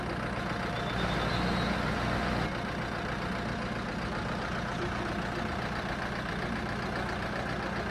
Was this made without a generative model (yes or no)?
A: yes